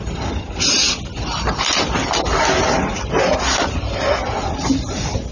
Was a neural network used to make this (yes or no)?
no